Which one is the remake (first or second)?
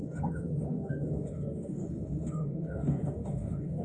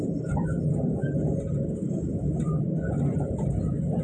first